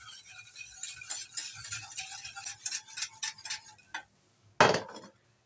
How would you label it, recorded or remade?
recorded